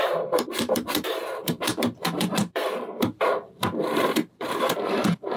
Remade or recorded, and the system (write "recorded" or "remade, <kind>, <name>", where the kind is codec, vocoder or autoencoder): remade, vocoder, BigVGAN v2